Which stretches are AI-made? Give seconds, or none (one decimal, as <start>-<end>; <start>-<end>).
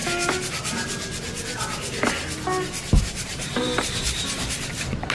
3.0-5.1